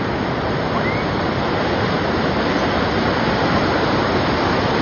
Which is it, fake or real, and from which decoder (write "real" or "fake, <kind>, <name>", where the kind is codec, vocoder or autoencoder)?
real